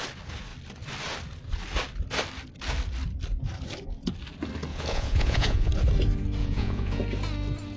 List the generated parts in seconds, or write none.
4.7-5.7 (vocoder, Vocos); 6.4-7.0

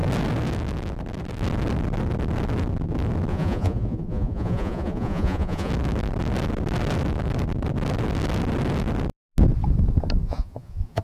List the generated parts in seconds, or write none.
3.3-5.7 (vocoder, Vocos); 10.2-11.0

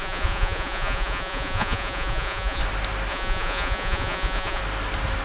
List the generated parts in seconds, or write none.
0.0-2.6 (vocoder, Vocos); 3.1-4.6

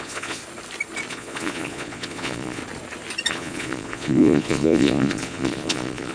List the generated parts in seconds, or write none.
0.0-0.4 (vocoder, Vocos); 1.1-2.6; 3.3-6.1

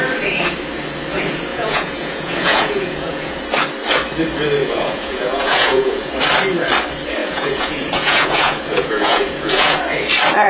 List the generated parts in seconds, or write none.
1.5-3.4 (vocoder, Vocos); 4.6-6.1; 7.2-9.8